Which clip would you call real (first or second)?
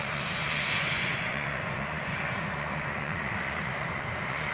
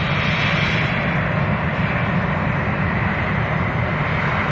second